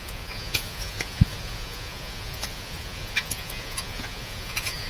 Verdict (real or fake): fake